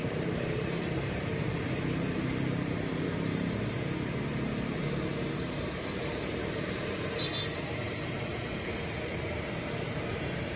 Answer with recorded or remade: remade